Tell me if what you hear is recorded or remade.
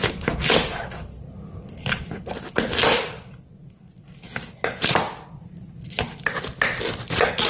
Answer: recorded